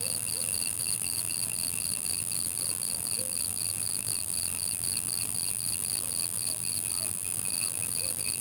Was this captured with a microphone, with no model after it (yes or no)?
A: no